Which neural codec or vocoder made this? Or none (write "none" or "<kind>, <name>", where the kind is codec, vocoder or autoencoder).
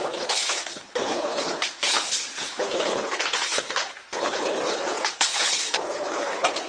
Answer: codec, HILCodec